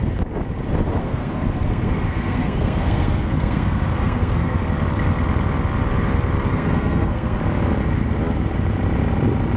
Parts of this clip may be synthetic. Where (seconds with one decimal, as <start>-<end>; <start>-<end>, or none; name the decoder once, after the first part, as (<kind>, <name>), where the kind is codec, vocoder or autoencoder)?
1.0-4.6 (codec, SNAC); 6.5-7.4